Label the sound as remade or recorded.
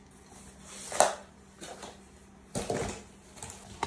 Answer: recorded